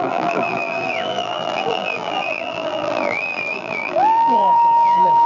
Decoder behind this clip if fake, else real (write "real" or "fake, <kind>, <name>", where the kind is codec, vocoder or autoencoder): fake, vocoder, BigVGAN v2